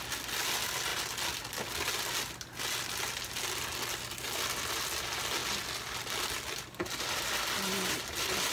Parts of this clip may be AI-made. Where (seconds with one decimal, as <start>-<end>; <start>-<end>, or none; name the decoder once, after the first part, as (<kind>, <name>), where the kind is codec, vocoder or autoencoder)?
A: none